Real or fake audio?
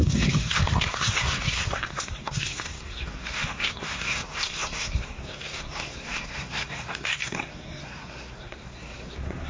fake